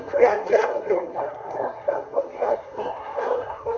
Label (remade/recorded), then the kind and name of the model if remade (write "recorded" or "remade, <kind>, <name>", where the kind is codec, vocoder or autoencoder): remade, codec, SNAC